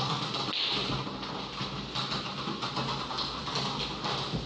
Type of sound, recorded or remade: recorded